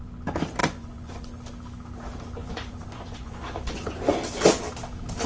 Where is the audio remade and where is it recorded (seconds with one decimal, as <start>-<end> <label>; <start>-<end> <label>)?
0.0-0.6 recorded; 0.6-1.3 remade; 1.3-2.4 recorded; 2.4-4.1 remade; 4.1-5.3 recorded